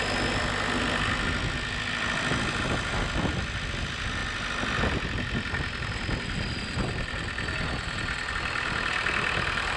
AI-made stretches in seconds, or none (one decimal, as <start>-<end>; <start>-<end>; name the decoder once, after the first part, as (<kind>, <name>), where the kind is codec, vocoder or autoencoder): none